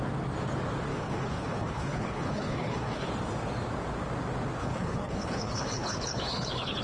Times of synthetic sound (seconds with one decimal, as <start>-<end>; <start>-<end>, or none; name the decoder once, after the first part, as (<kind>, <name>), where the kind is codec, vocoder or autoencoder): 0.9-3.1 (codec, HILCodec); 4.6-6.8